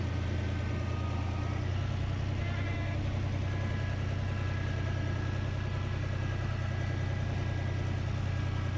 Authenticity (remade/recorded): recorded